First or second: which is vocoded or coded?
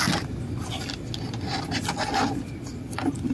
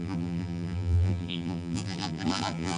second